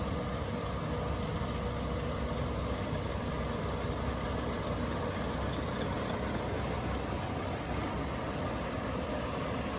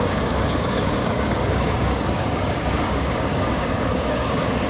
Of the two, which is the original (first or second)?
first